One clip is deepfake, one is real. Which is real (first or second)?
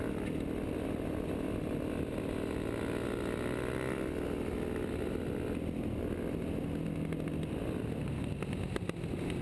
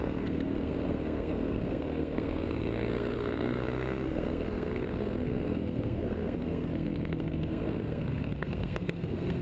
first